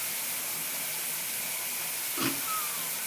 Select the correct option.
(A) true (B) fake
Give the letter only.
A